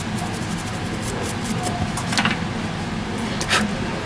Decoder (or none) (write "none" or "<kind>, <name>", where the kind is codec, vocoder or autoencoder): none